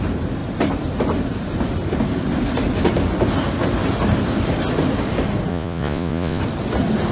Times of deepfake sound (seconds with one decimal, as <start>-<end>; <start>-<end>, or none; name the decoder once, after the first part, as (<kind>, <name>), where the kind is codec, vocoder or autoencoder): 5.5-6.4 (vocoder, Vocos)